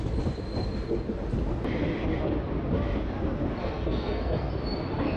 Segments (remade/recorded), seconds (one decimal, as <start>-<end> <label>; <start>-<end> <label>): 0.0-3.6 recorded; 3.6-4.5 remade; 4.5-5.2 recorded